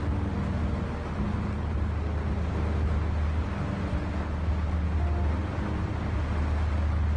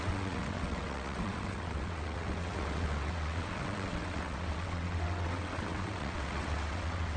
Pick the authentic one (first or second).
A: first